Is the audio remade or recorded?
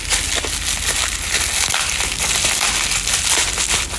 recorded